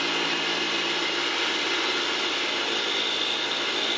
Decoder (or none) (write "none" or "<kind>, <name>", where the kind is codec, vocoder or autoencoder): none